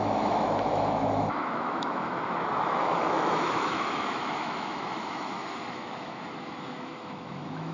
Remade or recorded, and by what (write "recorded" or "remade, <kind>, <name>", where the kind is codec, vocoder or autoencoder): remade, autoencoder, DAC-VAE